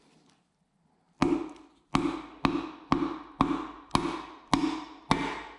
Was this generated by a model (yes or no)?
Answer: no